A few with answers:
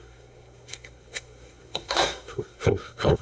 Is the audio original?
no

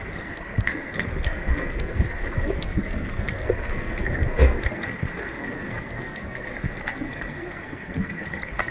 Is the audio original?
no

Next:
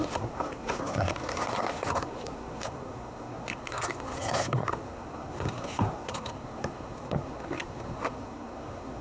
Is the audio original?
no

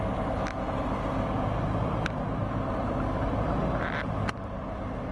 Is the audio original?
yes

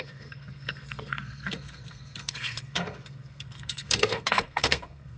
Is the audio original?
no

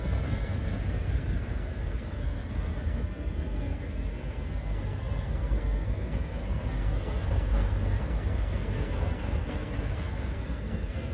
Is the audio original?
no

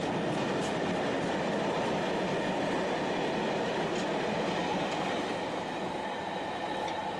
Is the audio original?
yes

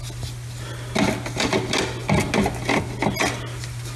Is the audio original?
yes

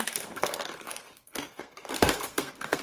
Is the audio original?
no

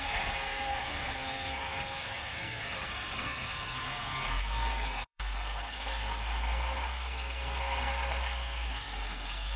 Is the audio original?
no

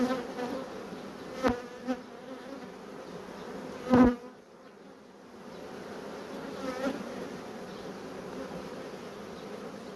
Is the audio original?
yes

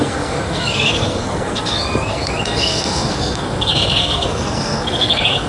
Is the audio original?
no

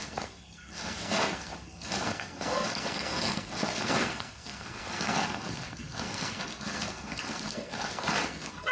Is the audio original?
no